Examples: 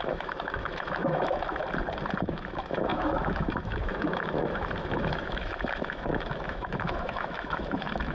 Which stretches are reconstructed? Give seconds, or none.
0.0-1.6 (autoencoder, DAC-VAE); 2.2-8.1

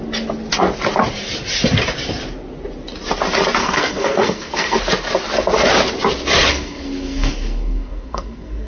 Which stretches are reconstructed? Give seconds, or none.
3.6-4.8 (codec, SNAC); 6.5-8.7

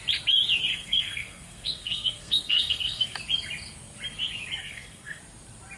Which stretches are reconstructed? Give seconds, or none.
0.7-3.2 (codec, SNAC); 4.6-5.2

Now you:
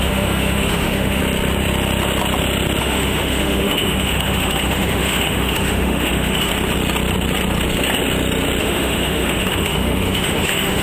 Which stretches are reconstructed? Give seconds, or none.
0.0-1.2 (autoencoder, DAC-VAE); 2.8-6.5; 8.6-10.8

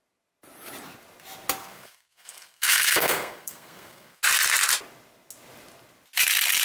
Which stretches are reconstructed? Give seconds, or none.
1.6-4.2 (codec, SNAC)

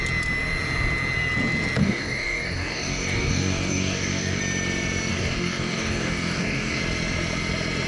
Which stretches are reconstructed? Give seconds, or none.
1.8-4.4 (codec, DAC); 5.1-6.8

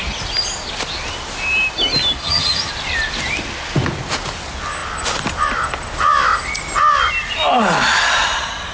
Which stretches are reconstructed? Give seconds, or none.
2.2-2.7 (vocoder, HiFi-GAN)

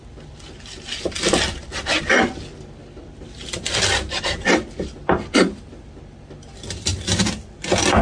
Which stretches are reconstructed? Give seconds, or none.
0.0-6.9 (vocoder, BigVGAN v2)